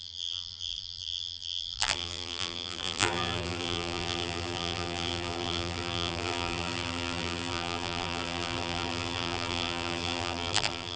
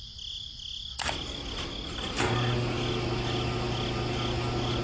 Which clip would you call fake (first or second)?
first